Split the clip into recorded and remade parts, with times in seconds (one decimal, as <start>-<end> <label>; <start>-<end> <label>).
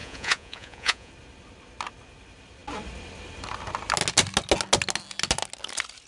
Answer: 0.0-1.1 remade; 1.1-6.1 recorded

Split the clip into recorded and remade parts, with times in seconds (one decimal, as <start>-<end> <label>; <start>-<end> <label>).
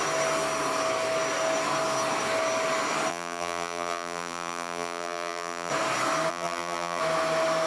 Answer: 0.0-3.1 recorded; 3.1-5.7 remade; 5.7-6.3 recorded; 6.3-7.0 remade; 7.0-7.7 recorded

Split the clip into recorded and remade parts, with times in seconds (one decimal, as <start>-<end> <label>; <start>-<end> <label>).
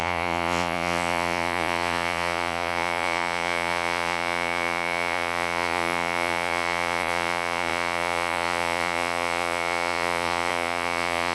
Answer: 0.0-11.3 remade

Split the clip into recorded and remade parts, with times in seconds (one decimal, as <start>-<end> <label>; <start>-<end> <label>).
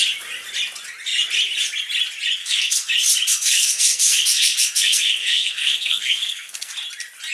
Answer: 0.0-2.4 recorded; 2.4-2.9 remade; 2.9-3.3 recorded; 3.3-6.7 remade; 6.7-7.3 recorded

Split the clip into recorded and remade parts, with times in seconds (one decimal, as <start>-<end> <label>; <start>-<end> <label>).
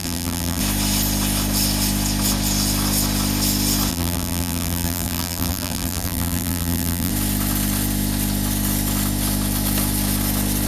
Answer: 0.0-0.6 remade; 0.6-3.9 recorded; 3.9-7.1 remade; 7.1-10.7 recorded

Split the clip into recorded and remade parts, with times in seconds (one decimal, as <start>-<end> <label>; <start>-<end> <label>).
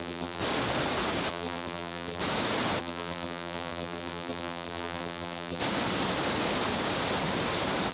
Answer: 0.0-0.4 remade; 0.4-1.3 recorded; 1.3-2.2 remade; 2.2-2.8 recorded; 2.8-5.6 remade; 5.6-7.9 recorded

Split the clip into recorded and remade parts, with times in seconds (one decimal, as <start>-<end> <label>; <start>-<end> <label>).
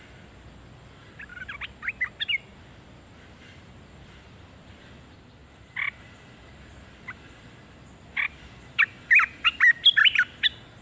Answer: 0.0-10.8 recorded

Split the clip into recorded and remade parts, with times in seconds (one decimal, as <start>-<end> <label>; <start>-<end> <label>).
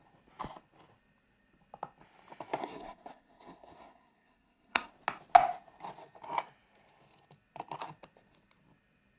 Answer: 0.0-2.6 recorded; 2.6-4.9 remade; 4.9-9.2 recorded